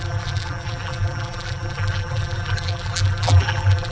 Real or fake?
fake